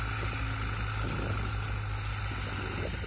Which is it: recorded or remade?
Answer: recorded